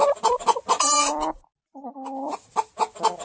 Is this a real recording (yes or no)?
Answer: yes